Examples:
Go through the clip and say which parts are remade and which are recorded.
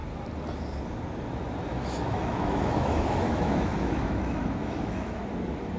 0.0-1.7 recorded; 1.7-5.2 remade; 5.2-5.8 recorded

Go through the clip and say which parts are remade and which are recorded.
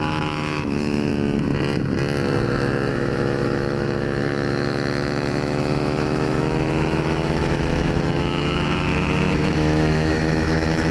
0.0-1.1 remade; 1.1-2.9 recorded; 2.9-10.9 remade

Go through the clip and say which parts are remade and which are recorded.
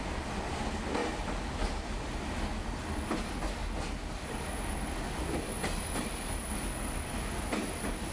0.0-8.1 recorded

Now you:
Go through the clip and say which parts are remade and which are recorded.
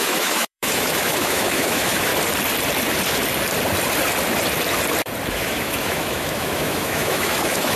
0.0-2.1 remade; 2.1-5.3 recorded; 5.3-7.8 remade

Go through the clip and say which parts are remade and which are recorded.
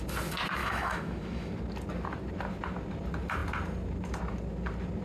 0.0-0.6 recorded; 0.6-1.5 remade; 1.5-5.0 recorded